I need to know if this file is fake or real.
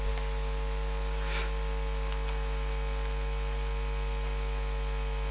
real